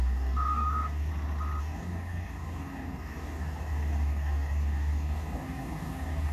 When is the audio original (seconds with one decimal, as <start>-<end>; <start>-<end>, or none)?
1.1-1.6